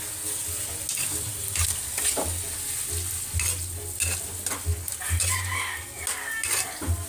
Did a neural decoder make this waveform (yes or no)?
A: no